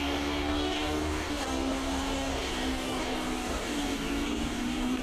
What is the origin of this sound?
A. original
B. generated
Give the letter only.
B